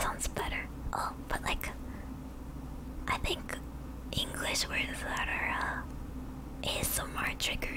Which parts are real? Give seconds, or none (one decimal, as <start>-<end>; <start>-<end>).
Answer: 4.7-5.3; 6.2-7.8